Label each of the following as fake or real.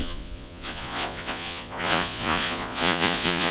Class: fake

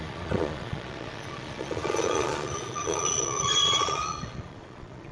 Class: fake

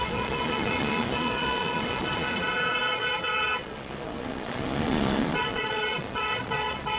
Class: fake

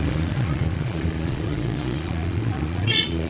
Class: fake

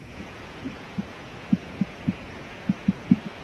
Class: fake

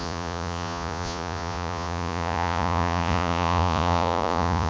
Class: fake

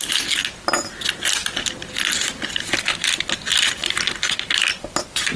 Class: real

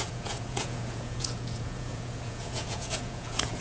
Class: fake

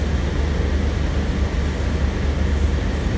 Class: real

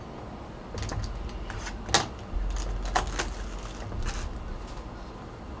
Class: real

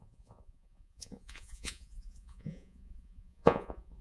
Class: fake